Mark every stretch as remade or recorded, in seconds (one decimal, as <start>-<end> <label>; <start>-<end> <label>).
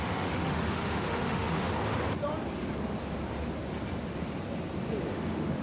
0.0-1.7 remade; 1.7-5.1 recorded; 5.1-5.6 remade